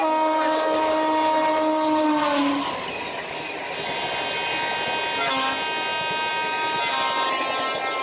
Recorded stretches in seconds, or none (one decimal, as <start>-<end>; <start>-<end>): 0.0-8.0

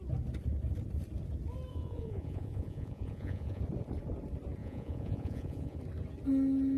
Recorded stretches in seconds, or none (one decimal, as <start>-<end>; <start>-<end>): 0.0-1.7; 3.6-4.6; 5.8-6.8

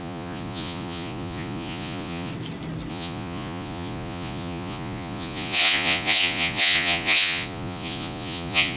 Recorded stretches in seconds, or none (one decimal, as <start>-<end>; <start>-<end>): 2.3-2.9